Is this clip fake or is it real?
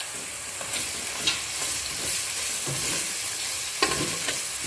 real